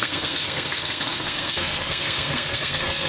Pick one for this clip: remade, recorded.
remade